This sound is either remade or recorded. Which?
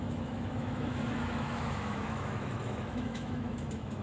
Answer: remade